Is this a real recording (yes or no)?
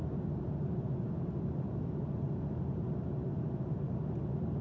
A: yes